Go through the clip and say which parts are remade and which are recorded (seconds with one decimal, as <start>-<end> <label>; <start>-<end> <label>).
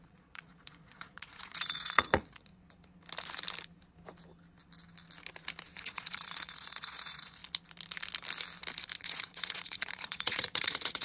0.0-2.5 remade; 2.5-5.8 recorded; 5.8-7.4 remade; 7.4-9.0 recorded; 9.0-11.0 remade